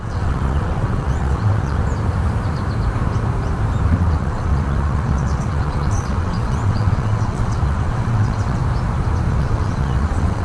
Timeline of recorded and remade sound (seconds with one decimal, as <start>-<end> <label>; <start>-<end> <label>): 0.0-1.8 remade; 1.8-3.9 recorded; 3.9-8.6 remade; 8.6-9.3 recorded; 9.3-10.4 remade